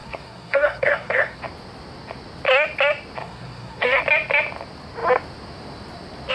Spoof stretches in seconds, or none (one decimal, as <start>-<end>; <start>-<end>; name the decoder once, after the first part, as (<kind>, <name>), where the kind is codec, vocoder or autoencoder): 0.0-1.4 (codec, SNAC); 3.2-4.0